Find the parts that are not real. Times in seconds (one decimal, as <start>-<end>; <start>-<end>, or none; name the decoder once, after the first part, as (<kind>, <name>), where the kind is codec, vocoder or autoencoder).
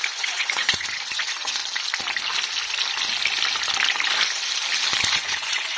0.0-1.6 (vocoder, Vocos); 5.1-5.8